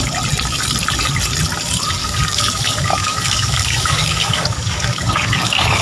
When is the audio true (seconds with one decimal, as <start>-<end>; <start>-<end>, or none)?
0.0-2.0

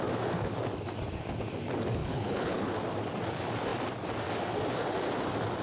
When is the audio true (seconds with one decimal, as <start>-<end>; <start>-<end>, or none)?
0.0-2.0; 2.6-5.6